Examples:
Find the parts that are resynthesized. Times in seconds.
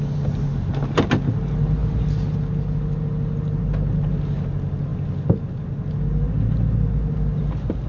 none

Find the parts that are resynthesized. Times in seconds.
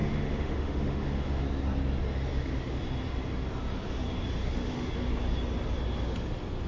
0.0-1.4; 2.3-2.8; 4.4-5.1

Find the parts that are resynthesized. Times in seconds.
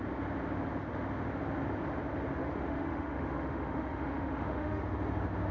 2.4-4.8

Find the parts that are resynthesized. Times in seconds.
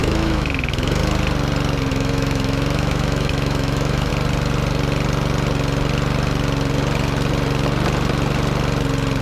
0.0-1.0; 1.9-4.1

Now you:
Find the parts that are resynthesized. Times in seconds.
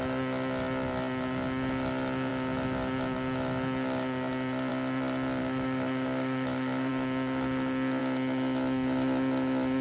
5.4-6.9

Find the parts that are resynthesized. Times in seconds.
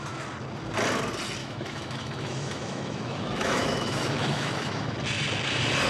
1.4-4.9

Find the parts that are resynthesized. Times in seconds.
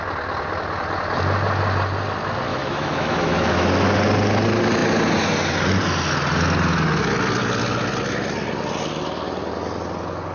2.5-3.7